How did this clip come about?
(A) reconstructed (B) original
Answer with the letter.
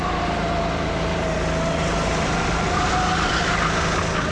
B